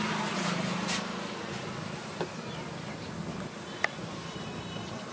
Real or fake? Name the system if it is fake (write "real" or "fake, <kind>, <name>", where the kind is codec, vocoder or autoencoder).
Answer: real